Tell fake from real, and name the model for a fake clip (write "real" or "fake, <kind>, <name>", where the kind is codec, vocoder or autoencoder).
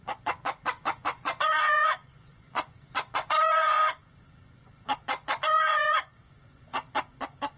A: fake, vocoder, Vocos